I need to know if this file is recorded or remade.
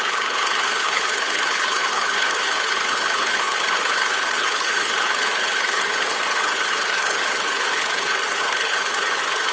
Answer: remade